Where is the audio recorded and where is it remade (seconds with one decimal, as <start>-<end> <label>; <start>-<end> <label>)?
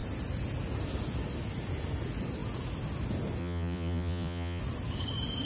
0.0-3.4 recorded; 3.4-4.6 remade; 4.6-5.5 recorded